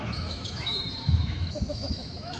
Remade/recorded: remade